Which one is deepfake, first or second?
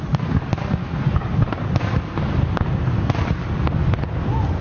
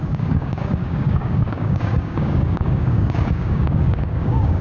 second